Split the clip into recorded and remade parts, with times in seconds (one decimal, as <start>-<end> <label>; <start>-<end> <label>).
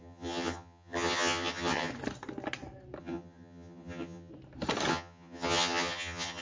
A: 0.0-1.9 remade; 1.9-3.0 recorded; 3.0-4.3 remade; 4.3-4.9 recorded; 4.9-6.4 remade